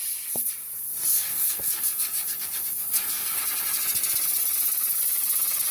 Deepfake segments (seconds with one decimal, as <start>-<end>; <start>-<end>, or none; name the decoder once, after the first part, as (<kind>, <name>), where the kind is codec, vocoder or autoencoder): 1.1-3.4 (codec, SNAC)